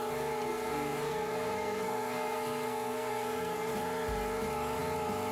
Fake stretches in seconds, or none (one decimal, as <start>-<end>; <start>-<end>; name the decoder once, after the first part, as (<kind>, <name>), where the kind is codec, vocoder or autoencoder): 0.5-3.7 (codec, SNAC)